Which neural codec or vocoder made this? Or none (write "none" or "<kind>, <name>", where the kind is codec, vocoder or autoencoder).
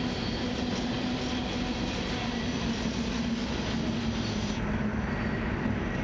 none